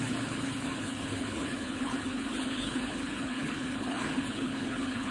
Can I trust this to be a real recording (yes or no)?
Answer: no